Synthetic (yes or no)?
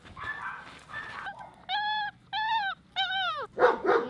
no